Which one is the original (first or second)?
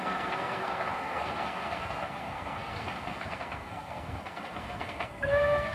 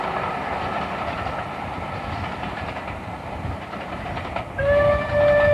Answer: second